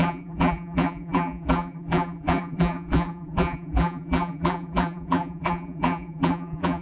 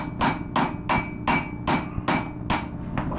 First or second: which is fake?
first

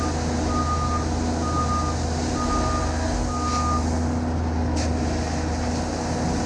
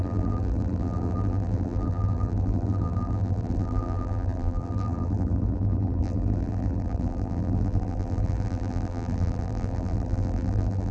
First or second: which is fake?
second